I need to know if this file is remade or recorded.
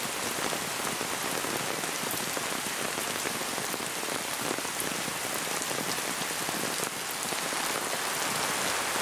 recorded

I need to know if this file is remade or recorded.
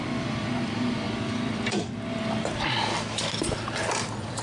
remade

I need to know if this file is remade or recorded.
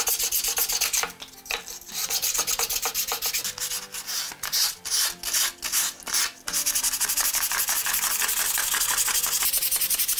recorded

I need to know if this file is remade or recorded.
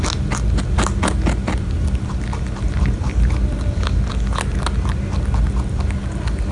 recorded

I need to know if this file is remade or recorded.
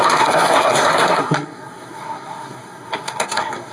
remade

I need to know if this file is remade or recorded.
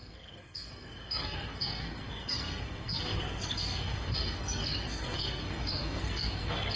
remade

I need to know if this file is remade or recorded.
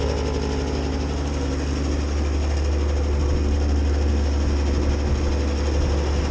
recorded